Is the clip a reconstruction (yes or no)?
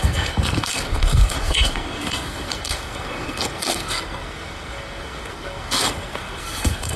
yes